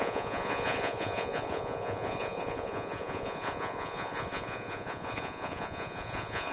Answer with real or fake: fake